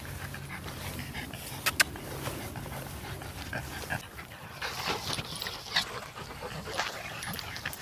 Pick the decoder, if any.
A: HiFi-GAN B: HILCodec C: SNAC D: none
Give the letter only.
D